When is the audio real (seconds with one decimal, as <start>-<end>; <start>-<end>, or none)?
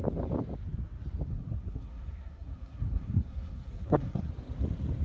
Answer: 0.0-1.3; 4.3-5.0